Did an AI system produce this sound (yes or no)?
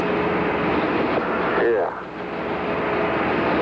no